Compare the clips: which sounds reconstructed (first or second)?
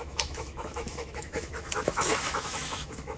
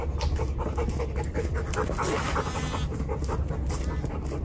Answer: first